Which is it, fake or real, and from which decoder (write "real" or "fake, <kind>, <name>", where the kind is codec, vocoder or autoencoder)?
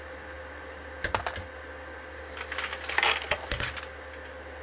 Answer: real